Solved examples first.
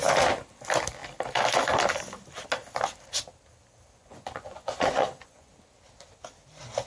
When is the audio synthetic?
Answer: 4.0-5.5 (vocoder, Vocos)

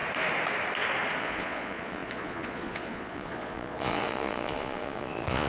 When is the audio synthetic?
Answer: 1.2-5.5 (vocoder, Vocos)

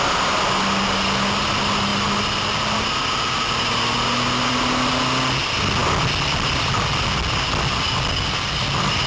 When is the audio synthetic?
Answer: none